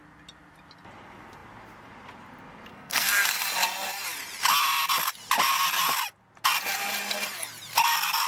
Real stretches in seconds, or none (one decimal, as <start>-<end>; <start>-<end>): 0.0-2.7; 3.3-8.3